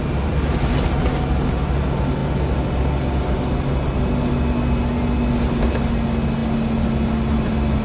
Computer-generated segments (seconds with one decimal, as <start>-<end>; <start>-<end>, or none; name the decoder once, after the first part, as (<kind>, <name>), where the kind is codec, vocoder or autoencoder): none